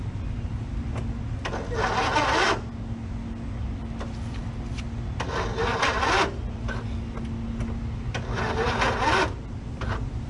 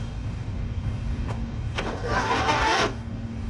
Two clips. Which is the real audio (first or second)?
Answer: first